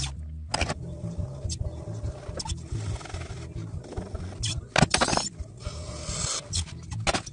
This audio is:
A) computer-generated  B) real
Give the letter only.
B